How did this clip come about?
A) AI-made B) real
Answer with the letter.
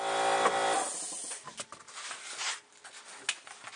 B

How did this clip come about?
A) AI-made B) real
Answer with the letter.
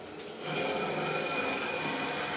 B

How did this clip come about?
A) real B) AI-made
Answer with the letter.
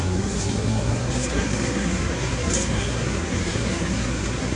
B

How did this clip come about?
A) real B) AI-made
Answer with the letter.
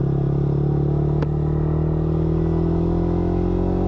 A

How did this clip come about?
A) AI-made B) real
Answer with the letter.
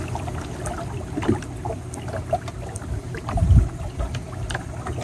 B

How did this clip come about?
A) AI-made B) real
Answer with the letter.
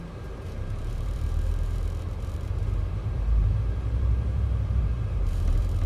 A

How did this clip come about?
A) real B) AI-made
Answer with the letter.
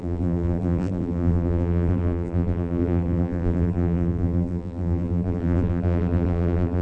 B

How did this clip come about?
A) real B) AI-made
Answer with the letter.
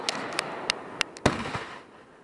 A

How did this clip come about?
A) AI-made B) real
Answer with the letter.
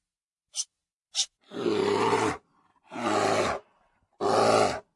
B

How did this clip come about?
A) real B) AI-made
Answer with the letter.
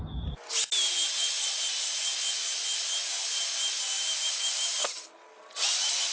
A